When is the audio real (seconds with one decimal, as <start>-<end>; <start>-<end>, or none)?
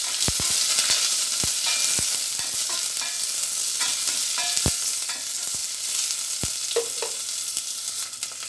0.0-8.5